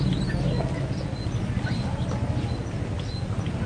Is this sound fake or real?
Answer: real